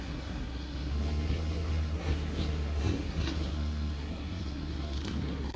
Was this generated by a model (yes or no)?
yes